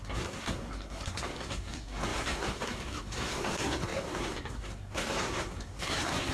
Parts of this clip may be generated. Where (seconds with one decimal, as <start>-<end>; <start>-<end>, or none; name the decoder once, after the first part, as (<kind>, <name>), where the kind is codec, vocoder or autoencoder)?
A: 0.0-6.3 (codec, SNAC)